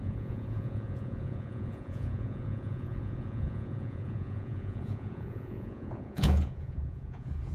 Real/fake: fake